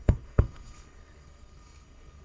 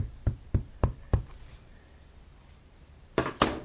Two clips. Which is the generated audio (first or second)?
first